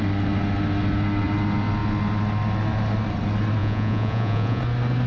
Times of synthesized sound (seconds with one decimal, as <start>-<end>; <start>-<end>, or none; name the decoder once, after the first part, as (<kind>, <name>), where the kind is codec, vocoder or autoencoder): 3.6-4.6 (vocoder, Vocos)